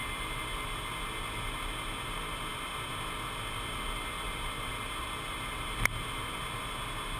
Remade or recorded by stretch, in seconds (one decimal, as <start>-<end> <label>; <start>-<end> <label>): 0.0-7.2 recorded